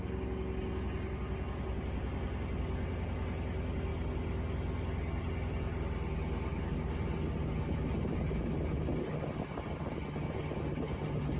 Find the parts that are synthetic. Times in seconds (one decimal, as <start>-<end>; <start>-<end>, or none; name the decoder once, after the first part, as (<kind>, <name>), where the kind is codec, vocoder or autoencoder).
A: none